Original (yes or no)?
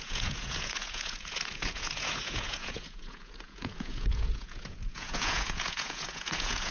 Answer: no